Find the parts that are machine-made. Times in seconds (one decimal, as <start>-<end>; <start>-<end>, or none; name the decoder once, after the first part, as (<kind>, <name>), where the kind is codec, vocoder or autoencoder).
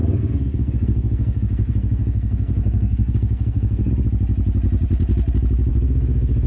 0.0-3.9 (codec, SNAC); 5.7-6.5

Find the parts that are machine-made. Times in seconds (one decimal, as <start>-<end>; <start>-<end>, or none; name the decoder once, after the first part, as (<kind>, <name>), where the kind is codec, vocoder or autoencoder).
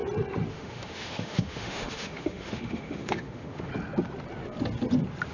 0.5-3.7 (autoencoder, DAC-VAE)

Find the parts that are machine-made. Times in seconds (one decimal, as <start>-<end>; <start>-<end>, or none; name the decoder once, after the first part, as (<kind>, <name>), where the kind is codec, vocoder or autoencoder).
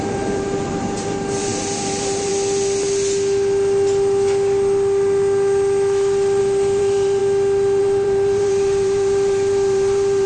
0.0-2.3 (vocoder, BigVGAN v2); 6.4-7.2; 7.8-10.3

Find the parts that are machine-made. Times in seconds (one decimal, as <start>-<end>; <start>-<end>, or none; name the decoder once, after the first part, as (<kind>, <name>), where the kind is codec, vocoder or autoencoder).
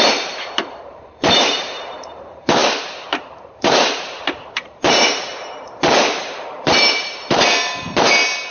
0.0-2.6 (vocoder, BigVGAN v2); 3.1-5.3; 6.0-8.5